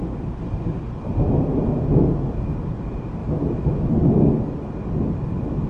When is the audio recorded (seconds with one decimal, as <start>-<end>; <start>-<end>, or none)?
0.0-5.7